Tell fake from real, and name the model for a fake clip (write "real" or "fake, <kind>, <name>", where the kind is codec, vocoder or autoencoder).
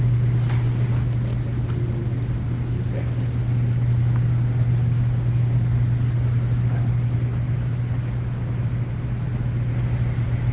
real